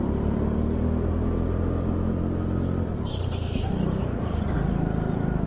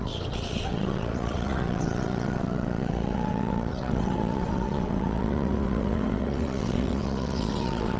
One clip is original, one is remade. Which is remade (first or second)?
second